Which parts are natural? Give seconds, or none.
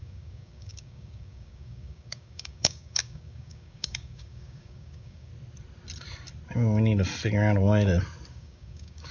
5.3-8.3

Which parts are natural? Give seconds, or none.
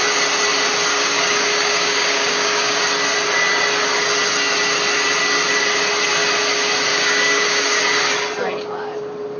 0.0-0.9; 2.8-6.9; 7.8-9.4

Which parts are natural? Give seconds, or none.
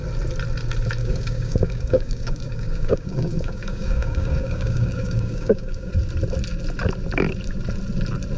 0.0-1.0; 5.9-8.4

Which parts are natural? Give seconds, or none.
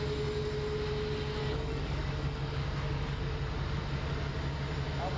0.0-1.4; 3.2-5.2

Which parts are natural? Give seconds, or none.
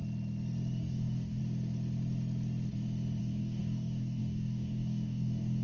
0.0-0.8; 1.4-3.2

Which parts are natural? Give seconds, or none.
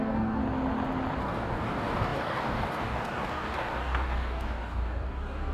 0.4-1.2